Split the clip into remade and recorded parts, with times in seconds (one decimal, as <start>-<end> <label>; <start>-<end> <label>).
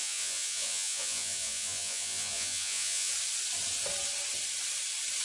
0.0-3.1 remade; 3.1-5.2 recorded